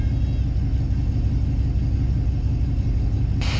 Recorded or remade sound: recorded